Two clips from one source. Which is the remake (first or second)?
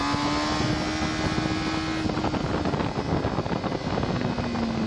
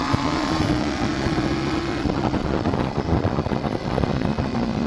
second